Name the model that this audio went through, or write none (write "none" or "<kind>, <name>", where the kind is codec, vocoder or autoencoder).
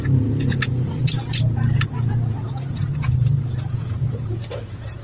vocoder, Vocos